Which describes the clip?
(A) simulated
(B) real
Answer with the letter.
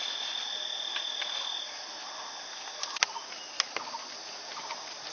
B